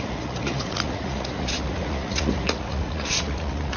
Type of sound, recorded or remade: remade